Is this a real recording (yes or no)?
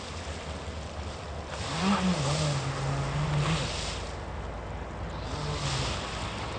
yes